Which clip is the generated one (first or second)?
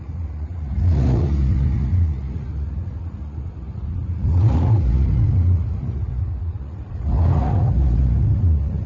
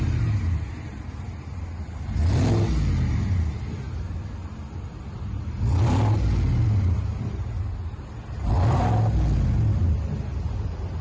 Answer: first